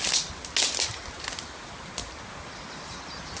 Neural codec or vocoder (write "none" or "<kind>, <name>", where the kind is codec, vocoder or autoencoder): none